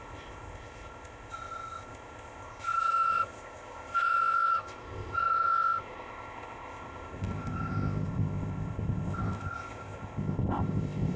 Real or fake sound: fake